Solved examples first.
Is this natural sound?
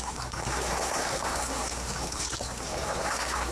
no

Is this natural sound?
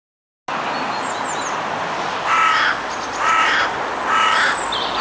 yes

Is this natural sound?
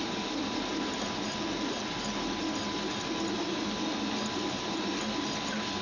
yes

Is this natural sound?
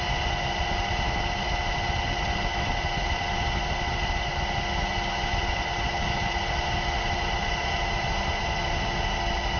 yes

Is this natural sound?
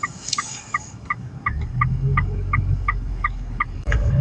no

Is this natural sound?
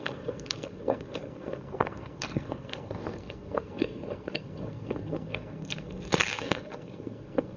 no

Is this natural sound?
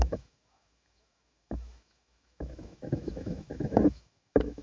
no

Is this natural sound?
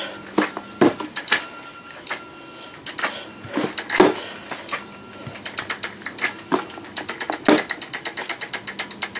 yes